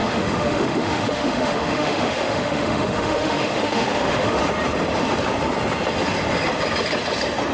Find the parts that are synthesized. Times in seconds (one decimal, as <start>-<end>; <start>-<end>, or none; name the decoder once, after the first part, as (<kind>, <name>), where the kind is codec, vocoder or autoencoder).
0.0-4.4 (autoencoder, DAC-VAE)